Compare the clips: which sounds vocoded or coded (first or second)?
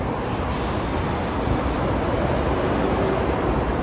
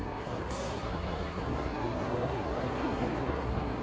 second